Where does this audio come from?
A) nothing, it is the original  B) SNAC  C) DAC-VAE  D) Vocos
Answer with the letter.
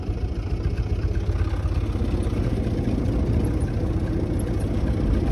A